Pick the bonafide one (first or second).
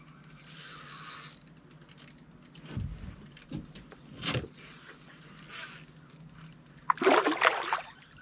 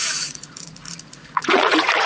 first